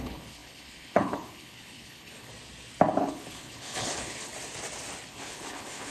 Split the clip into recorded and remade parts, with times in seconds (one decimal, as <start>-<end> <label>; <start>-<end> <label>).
0.0-2.3 remade; 2.3-3.0 recorded; 3.0-4.3 remade; 4.3-5.1 recorded; 5.1-5.9 remade

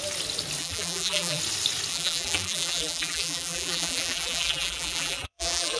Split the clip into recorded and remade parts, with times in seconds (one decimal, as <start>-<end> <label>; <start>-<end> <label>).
0.0-0.6 recorded; 0.6-1.4 remade; 1.4-1.9 recorded; 1.9-5.8 remade

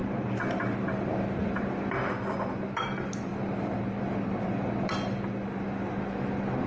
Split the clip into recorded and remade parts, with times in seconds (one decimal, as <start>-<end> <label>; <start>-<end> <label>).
0.0-6.7 recorded

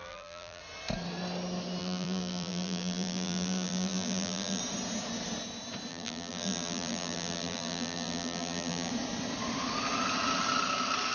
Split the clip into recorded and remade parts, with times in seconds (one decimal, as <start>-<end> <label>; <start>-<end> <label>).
0.0-0.6 remade; 0.6-1.8 recorded; 1.8-4.6 remade; 4.6-5.9 recorded; 5.9-8.9 remade; 8.9-11.1 recorded

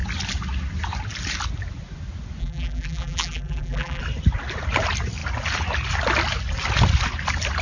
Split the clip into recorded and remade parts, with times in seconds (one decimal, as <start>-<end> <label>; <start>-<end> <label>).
0.0-2.4 recorded; 2.4-4.0 remade; 4.0-7.6 recorded

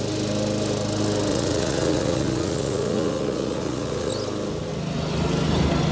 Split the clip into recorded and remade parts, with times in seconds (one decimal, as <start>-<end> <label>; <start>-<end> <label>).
0.0-1.3 recorded; 1.3-4.1 remade; 4.1-5.9 recorded